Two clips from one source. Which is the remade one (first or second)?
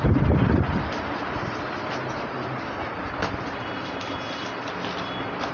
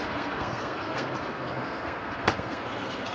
second